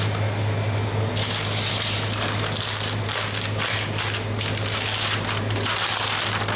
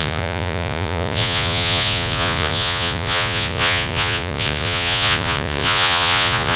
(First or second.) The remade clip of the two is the second